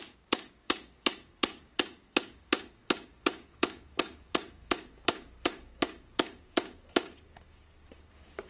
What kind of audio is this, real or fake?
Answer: fake